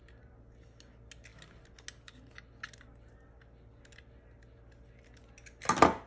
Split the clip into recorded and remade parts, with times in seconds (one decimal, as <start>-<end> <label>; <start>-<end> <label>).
0.0-6.1 recorded